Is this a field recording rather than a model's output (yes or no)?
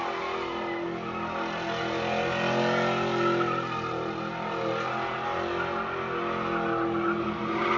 yes